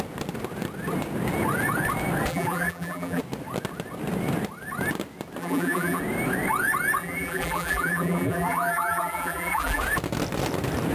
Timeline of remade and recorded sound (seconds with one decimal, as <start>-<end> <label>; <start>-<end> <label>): 0.0-2.3 recorded; 2.3-3.2 remade; 3.2-5.4 recorded; 5.4-6.0 remade; 6.0-7.0 recorded; 7.0-9.8 remade; 9.8-10.9 recorded